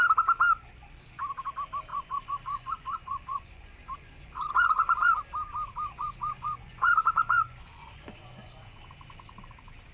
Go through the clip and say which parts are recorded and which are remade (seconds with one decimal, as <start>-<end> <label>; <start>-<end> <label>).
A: 0.0-1.9 recorded; 1.9-5.2 remade; 5.2-6.0 recorded; 6.0-8.8 remade; 8.8-9.9 recorded

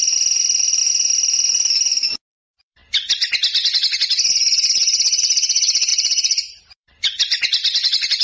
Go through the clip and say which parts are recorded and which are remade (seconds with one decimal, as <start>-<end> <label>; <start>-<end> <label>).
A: 0.0-0.8 remade; 0.8-2.3 recorded; 2.3-2.8 remade; 2.8-5.2 recorded; 5.2-8.2 remade

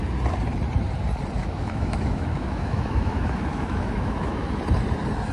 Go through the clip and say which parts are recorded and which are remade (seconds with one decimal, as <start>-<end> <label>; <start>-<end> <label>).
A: 0.0-1.4 recorded; 1.4-4.6 remade; 4.6-5.3 recorded

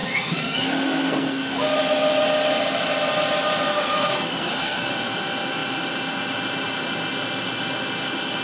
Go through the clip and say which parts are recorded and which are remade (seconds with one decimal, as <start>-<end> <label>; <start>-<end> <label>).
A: 0.0-1.6 remade; 1.6-3.7 recorded; 3.7-4.9 remade; 4.9-8.4 recorded

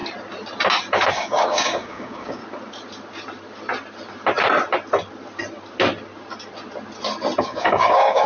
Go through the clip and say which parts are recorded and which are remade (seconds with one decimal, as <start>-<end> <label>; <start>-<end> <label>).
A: 0.0-1.1 recorded; 1.1-2.4 remade; 2.4-7.4 recorded; 7.4-8.3 remade

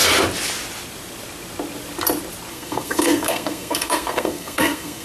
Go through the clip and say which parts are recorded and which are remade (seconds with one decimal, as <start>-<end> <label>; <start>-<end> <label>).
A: 0.0-2.5 recorded; 2.5-5.0 remade

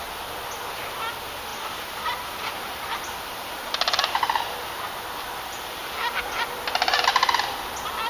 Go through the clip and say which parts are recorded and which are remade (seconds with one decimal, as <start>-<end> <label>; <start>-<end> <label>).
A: 0.0-1.5 recorded; 1.5-4.4 remade; 4.4-8.1 recorded